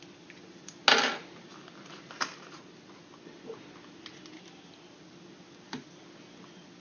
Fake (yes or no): no